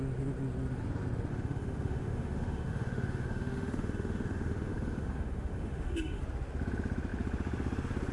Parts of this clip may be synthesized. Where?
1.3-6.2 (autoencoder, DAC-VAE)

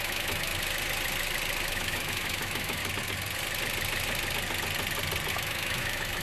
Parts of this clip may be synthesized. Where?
0.0-0.5 (autoencoder, DAC-VAE); 1.7-2.8; 5.3-6.2

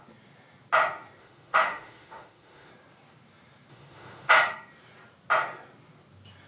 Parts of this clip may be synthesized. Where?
1.2-2.7 (autoencoder, DAC-VAE); 3.7-4.3

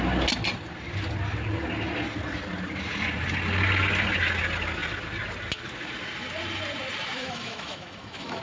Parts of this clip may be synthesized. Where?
7.1-8.4 (autoencoder, DAC-VAE)